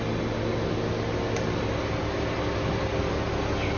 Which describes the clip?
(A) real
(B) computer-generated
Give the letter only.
A